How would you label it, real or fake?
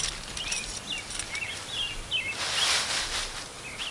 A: real